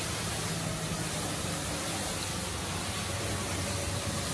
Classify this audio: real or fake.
real